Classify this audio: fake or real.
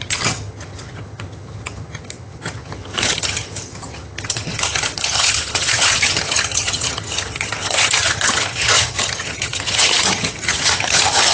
fake